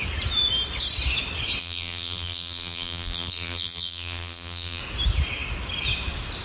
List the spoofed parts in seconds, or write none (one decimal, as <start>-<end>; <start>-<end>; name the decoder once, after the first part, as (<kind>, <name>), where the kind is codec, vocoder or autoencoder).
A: 1.6-4.8 (vocoder, BigVGAN v2)